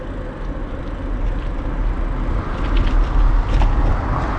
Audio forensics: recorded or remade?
recorded